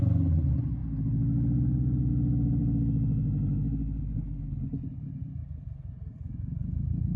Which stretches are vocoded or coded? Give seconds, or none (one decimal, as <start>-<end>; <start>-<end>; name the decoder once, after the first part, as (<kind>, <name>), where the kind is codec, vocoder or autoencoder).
none